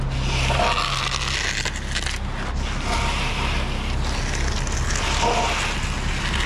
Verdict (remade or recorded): recorded